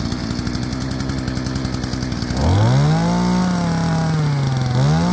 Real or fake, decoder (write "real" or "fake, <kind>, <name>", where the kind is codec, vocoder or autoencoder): real